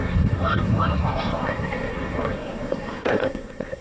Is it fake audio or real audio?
fake